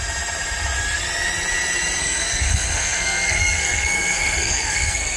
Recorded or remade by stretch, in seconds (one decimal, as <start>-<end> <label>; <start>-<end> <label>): 0.0-2.0 recorded; 2.0-5.2 remade